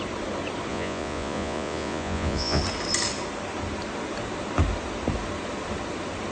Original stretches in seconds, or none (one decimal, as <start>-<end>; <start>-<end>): 0.0-0.7; 2.6-6.3